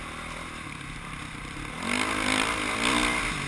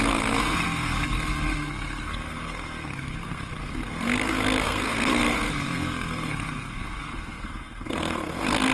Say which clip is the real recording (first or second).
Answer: first